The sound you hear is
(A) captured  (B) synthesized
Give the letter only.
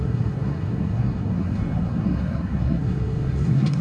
B